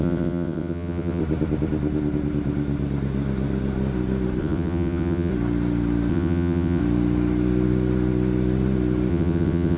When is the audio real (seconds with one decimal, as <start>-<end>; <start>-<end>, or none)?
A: 1.2-4.4; 5.3-6.1; 6.8-9.1